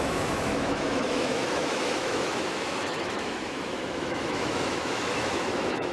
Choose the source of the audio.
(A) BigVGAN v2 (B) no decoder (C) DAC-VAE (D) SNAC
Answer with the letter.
C